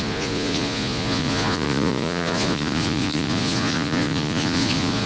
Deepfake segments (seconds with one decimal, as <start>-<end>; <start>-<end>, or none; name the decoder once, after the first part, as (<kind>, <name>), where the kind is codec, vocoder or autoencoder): 0.0-5.1 (vocoder, Vocos)